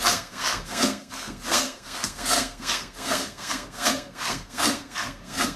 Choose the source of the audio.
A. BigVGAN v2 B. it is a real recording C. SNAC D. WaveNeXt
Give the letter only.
C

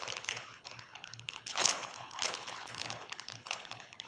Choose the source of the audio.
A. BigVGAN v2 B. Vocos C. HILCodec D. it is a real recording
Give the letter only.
C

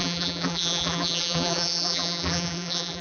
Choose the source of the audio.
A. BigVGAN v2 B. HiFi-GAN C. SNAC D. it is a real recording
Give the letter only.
A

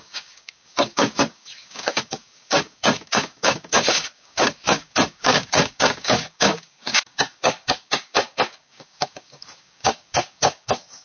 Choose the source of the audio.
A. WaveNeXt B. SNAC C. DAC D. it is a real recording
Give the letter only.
C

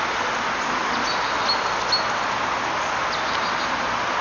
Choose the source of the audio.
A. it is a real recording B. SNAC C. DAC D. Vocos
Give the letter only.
A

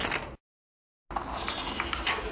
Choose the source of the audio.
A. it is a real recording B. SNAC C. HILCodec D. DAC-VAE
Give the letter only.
A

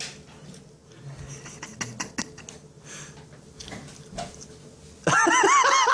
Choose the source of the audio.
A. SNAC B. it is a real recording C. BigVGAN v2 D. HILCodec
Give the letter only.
B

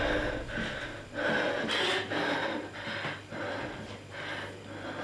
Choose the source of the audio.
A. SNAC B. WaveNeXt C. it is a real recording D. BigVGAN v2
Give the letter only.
C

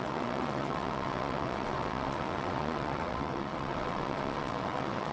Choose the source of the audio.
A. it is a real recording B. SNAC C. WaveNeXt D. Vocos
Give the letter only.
C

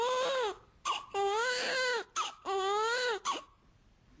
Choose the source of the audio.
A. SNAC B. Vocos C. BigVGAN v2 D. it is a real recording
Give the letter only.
D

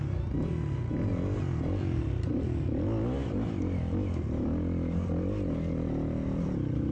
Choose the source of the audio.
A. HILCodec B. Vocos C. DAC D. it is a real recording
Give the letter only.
D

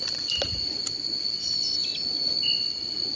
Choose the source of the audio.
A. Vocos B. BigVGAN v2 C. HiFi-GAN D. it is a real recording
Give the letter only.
D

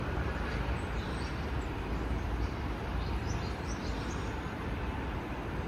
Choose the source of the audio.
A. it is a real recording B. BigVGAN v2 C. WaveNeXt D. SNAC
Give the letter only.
B